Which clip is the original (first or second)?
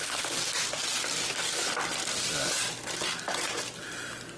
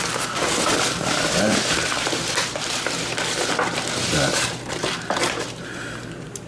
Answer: first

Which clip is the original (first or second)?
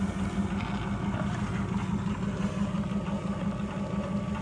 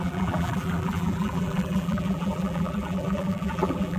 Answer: first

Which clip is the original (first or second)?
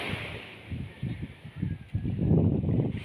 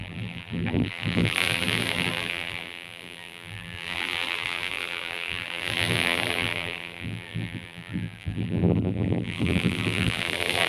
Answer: first